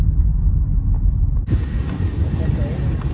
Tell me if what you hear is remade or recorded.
recorded